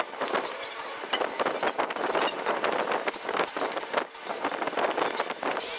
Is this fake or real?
real